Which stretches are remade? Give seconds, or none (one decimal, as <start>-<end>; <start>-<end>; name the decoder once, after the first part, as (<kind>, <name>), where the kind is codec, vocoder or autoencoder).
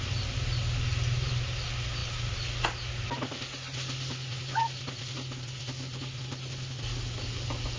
none